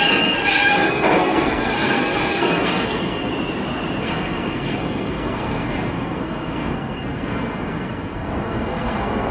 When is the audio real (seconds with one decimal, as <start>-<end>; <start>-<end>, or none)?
3.3-4.0

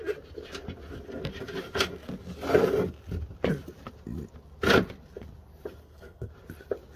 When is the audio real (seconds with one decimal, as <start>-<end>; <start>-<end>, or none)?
0.0-5.8; 6.3-7.0

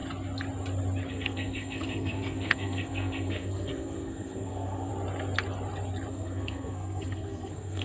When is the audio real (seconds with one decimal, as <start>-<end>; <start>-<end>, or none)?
0.0-1.1; 4.9-6.1

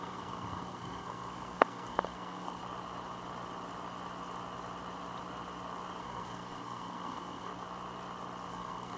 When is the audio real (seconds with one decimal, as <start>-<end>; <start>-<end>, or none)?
2.6-6.0; 7.5-8.5

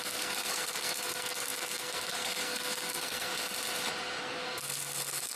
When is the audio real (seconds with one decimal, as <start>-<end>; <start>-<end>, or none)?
3.3-4.2

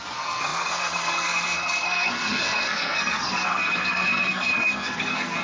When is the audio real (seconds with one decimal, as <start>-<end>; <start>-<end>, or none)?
none

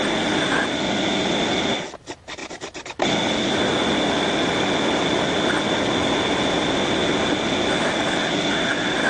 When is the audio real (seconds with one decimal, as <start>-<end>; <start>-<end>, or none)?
0.0-9.1

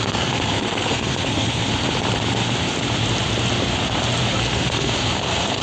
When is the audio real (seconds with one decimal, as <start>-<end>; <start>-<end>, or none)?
1.7-4.3